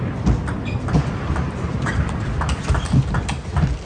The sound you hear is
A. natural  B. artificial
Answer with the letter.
A